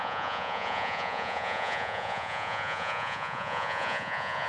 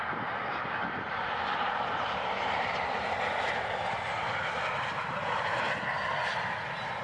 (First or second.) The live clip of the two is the second